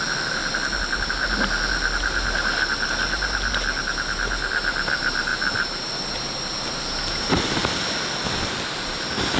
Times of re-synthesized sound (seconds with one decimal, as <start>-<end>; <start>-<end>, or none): 0.0-0.4; 4.5-9.4